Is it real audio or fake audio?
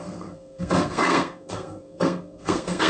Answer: fake